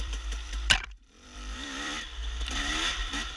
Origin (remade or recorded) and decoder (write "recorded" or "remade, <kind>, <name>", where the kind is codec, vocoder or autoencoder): remade, vocoder, BigVGAN v2